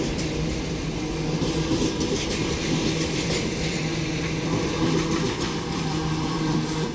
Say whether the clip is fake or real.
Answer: real